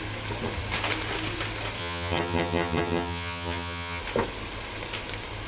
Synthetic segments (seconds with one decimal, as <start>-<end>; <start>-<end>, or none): 1.8-4.0